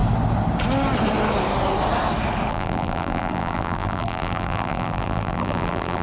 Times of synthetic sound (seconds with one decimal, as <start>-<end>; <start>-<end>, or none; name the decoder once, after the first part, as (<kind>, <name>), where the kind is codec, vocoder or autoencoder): 2.5-6.0 (vocoder, BigVGAN v2)